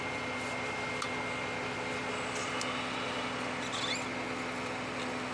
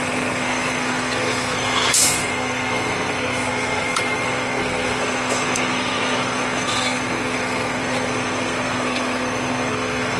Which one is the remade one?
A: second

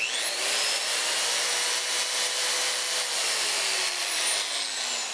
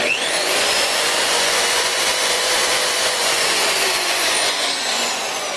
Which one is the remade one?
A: second